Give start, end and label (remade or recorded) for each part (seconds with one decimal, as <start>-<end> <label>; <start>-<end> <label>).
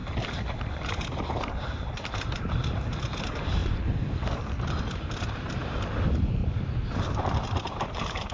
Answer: 0.0-0.6 recorded; 0.6-6.4 remade; 6.4-7.7 recorded; 7.7-8.3 remade